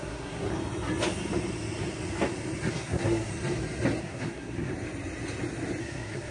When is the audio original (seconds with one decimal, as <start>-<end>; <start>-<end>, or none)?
0.5-2.7; 3.3-4.0; 4.7-5.8